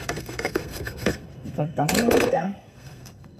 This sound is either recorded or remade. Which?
remade